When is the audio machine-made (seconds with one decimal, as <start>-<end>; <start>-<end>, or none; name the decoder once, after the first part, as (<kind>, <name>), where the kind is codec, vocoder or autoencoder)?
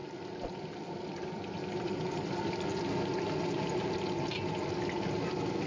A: none